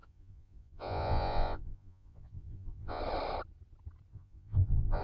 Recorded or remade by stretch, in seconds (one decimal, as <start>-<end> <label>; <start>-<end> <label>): 0.0-3.0 remade; 3.0-4.1 recorded; 4.1-5.0 remade